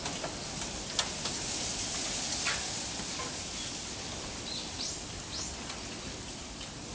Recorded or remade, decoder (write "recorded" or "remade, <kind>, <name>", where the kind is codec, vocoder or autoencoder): recorded